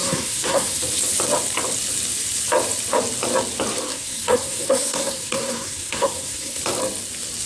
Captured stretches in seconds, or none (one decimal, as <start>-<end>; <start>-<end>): 0.8-3.9; 6.6-7.5